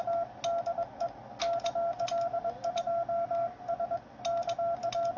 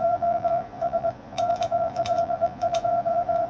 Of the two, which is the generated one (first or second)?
second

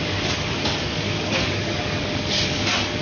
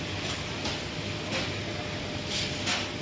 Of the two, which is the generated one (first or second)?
first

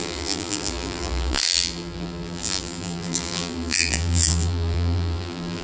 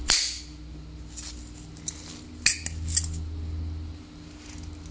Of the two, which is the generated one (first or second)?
first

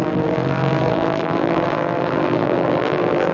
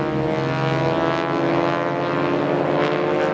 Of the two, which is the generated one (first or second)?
first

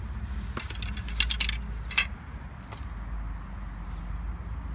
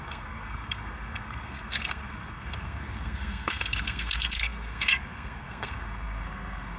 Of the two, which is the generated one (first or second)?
second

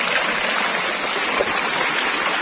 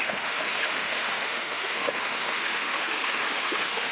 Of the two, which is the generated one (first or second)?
second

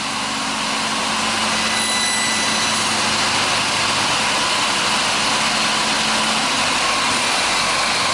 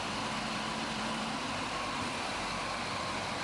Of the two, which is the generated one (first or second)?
second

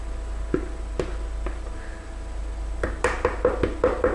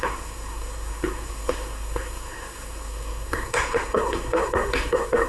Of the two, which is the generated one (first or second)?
second